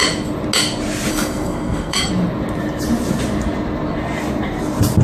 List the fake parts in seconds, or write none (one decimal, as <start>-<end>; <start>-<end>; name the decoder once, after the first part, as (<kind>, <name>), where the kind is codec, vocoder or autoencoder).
1.1-2.1 (codec, SNAC)